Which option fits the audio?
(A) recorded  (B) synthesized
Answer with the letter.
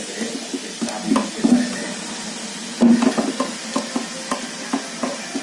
A